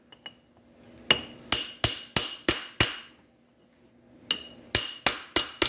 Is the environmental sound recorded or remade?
recorded